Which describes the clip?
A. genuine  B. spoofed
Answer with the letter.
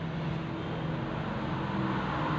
A